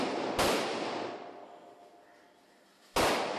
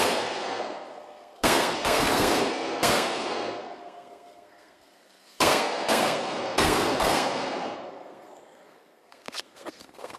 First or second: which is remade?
second